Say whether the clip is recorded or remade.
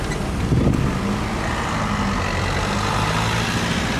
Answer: recorded